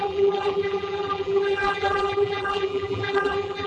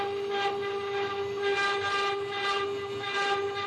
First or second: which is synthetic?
first